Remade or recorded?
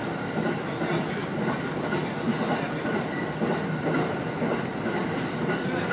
recorded